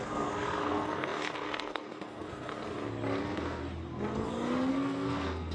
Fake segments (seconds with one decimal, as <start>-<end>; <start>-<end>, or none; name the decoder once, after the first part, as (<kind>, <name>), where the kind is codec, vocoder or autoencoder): 0.0-2.5 (codec, SNAC); 3.2-3.6; 4.7-5.5